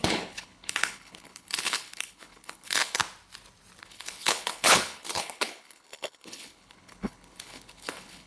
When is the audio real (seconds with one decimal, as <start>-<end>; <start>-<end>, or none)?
3.0-3.8